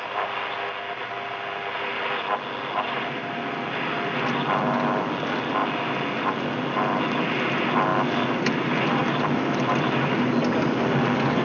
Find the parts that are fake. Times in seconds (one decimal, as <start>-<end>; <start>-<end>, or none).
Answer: none